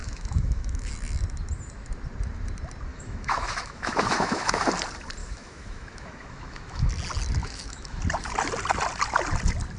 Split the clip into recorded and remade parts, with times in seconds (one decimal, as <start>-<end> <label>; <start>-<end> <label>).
0.0-0.9 remade; 0.9-2.9 recorded; 2.9-4.7 remade; 4.7-5.2 recorded; 5.2-6.9 remade; 6.9-7.4 recorded; 7.4-8.0 remade; 8.0-9.8 recorded